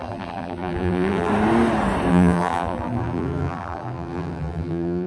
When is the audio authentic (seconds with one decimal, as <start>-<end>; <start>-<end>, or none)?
1.3-2.1